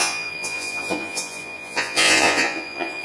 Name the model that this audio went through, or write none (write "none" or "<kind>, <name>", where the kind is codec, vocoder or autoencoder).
vocoder, Vocos